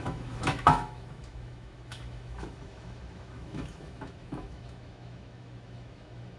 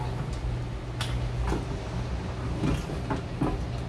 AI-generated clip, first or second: first